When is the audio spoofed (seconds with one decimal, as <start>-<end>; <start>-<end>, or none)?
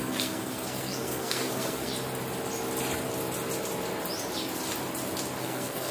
0.0-1.9; 5.4-5.9